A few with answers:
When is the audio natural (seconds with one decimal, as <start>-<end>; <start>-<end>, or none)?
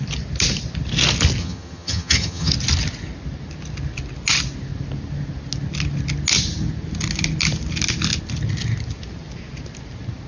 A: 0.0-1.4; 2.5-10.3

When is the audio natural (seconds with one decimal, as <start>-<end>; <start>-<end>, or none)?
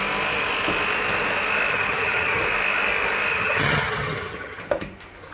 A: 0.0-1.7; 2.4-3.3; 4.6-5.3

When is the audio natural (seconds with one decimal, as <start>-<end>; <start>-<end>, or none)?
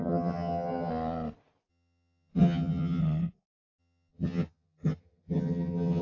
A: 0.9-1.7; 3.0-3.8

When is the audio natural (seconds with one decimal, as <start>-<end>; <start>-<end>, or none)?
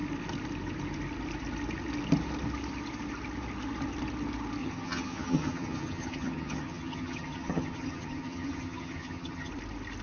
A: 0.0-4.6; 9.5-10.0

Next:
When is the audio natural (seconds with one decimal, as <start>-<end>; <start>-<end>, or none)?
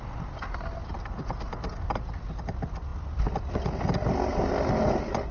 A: 0.0-5.3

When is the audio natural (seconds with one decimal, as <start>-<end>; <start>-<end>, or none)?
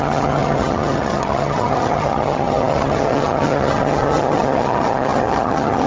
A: none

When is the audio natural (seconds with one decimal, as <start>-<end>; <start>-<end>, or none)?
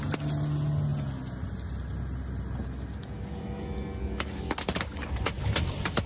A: 0.0-6.1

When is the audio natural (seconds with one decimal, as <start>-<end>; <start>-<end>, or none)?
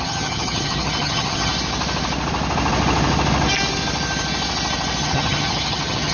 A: 1.5-5.0